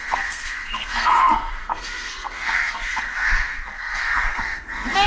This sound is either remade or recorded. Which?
remade